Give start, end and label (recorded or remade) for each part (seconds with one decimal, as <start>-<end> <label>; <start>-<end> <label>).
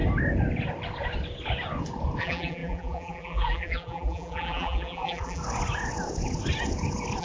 0.0-2.2 recorded; 2.2-5.4 remade; 5.4-7.2 recorded